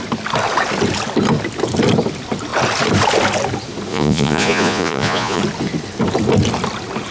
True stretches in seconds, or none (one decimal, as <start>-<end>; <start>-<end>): 0.0-3.9; 5.4-7.1